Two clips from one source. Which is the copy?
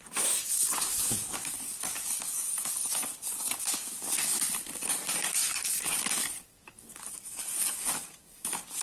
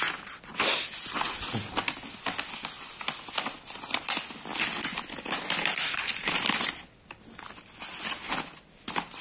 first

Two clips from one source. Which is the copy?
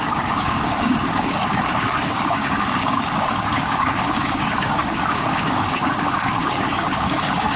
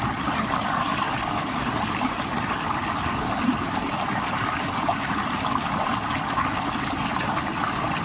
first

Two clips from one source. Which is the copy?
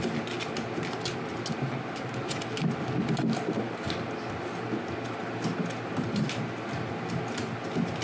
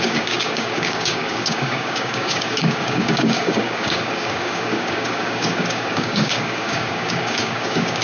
second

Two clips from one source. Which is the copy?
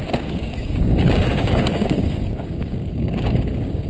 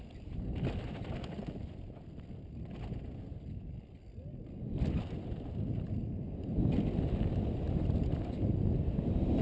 first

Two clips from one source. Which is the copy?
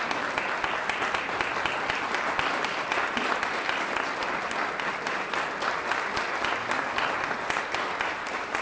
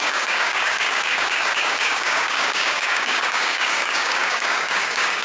second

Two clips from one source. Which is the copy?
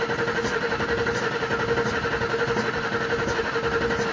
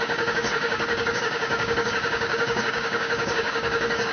second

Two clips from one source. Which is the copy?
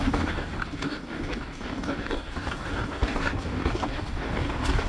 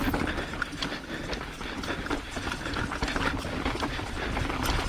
first